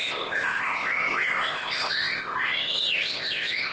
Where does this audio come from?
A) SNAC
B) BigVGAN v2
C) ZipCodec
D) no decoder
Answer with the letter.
C